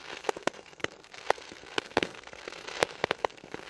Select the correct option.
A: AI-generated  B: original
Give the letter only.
A